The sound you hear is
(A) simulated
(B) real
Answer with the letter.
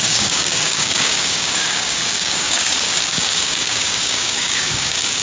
A